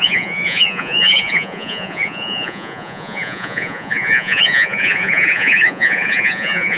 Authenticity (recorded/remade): remade